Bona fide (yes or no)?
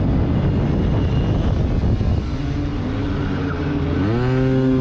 yes